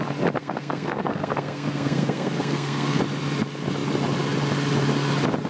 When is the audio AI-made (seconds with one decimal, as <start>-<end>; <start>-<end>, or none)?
0.4-3.0